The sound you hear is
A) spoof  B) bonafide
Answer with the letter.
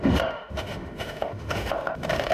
A